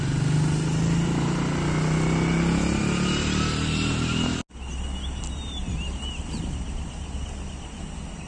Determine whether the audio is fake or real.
real